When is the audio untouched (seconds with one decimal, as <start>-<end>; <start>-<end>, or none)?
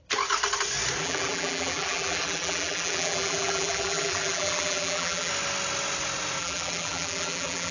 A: 0.0-1.0; 5.3-6.4